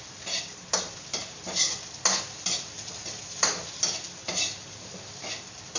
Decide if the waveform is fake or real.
real